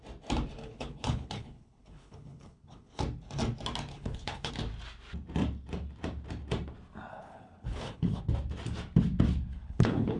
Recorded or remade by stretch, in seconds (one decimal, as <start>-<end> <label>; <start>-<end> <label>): 0.0-0.6 recorded; 0.6-3.0 remade; 3.0-3.9 recorded; 3.9-4.5 remade; 4.5-7.1 recorded; 7.1-8.2 remade; 8.2-9.5 recorded; 9.5-10.2 remade